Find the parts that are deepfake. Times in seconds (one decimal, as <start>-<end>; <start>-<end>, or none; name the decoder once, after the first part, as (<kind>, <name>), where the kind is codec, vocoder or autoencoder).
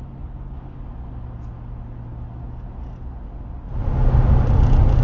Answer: none